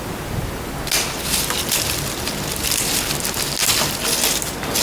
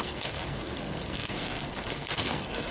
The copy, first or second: second